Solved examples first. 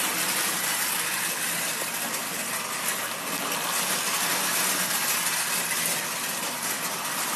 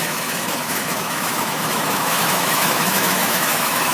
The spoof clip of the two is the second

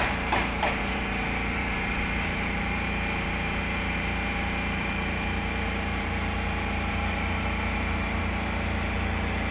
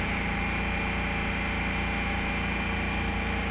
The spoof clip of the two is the first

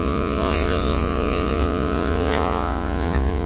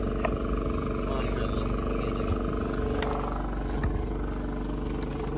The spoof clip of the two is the first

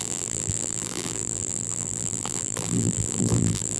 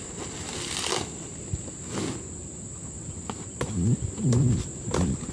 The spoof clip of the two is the first